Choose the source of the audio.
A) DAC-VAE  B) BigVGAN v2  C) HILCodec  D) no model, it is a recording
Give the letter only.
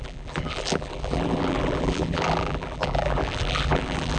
B